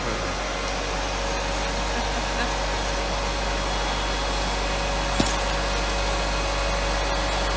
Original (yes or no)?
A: yes